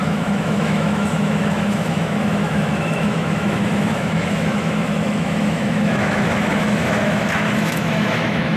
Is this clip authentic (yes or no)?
no